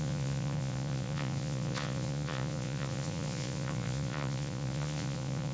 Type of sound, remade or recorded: remade